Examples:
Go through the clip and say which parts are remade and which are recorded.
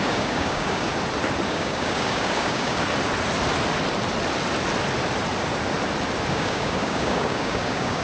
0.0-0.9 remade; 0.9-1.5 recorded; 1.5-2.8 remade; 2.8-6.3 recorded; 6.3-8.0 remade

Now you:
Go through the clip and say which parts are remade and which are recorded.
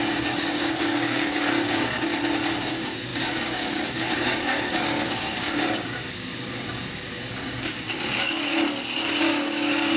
0.0-2.1 remade; 2.1-2.7 recorded; 2.7-8.5 remade; 8.5-9.2 recorded; 9.2-10.0 remade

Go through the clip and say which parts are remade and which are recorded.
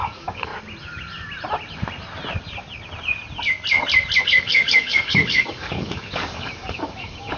0.0-0.5 remade; 0.5-4.2 recorded; 4.2-7.4 remade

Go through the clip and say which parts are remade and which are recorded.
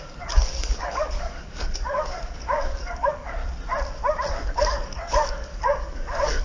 0.0-3.4 remade; 3.4-4.3 recorded; 4.3-6.4 remade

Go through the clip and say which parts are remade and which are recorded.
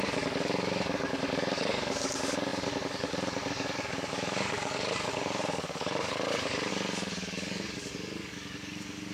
0.0-9.1 remade